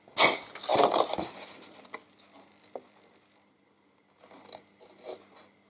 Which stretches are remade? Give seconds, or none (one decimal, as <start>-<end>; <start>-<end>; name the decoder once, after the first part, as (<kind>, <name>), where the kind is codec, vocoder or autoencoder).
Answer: 0.7-4.1 (vocoder, BigVGAN v2)